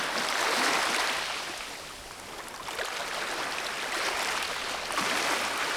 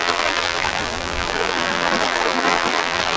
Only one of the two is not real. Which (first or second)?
second